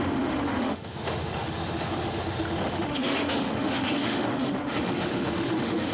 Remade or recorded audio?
remade